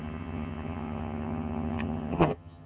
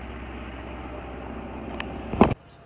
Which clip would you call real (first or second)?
second